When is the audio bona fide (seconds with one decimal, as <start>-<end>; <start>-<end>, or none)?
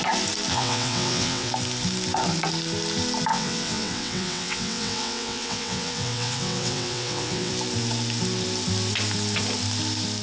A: 0.0-0.5; 1.5-3.3; 7.5-10.2